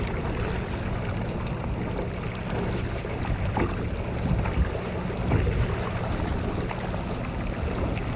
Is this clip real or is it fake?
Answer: real